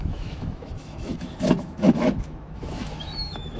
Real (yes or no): no